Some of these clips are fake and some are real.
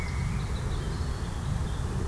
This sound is real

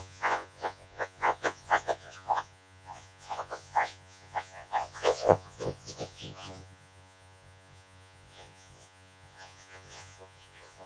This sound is fake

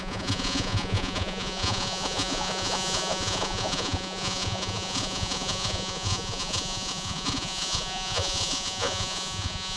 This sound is fake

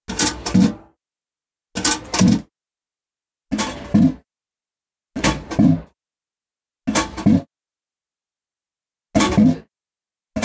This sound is real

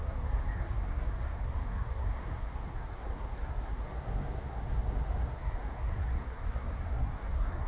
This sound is fake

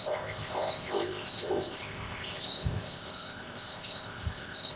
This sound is fake